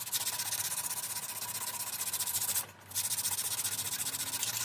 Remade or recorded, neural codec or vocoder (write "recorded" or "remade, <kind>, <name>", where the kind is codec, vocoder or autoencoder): recorded